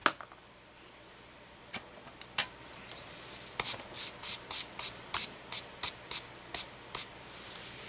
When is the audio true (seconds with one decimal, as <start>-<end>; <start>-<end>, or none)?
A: 0.0-7.9